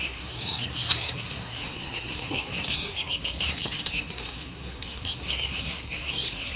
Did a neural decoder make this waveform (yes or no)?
yes